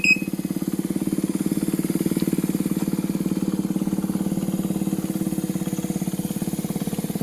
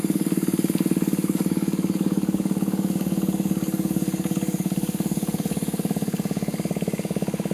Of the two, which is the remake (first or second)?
second